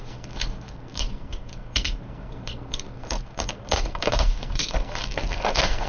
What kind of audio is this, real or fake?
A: fake